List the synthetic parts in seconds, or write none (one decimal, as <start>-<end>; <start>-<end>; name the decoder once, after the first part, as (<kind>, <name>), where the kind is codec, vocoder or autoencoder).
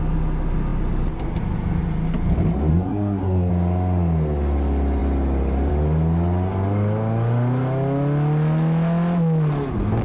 2.7-3.5 (codec, SNAC)